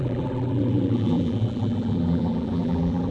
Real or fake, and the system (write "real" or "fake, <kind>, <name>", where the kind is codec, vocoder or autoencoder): fake, vocoder, BigVGAN v2